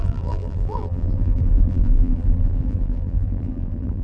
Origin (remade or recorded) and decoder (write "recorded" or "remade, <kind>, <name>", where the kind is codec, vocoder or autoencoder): remade, vocoder, BigVGAN v2